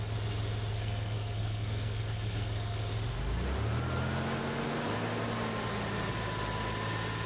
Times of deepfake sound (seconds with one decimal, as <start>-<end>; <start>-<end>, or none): 0.7-2.8